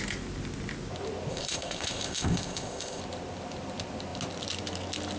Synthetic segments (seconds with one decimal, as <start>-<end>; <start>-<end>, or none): 1.3-3.0